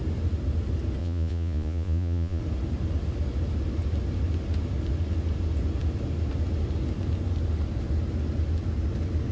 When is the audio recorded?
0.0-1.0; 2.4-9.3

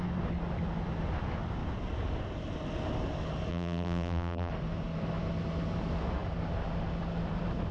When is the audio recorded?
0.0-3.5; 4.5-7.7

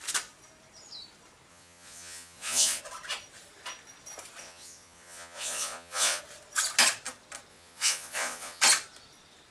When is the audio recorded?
0.0-1.5; 2.8-4.4; 6.2-7.5; 8.6-9.5